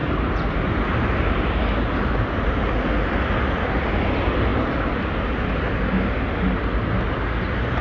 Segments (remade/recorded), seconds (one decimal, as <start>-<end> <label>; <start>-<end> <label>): 0.0-7.8 recorded